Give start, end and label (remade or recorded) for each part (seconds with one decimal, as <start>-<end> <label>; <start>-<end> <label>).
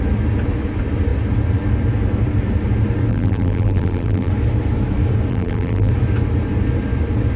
0.0-3.1 recorded; 3.1-4.3 remade; 4.3-5.3 recorded; 5.3-5.9 remade; 5.9-7.4 recorded